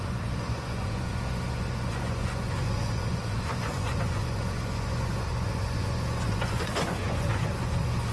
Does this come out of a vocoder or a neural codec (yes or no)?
yes